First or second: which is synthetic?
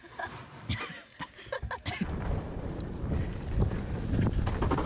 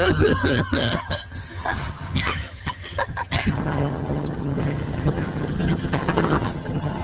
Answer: second